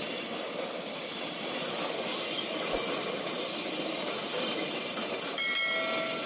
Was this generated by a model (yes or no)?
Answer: no